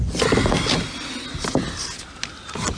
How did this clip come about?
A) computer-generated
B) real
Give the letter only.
B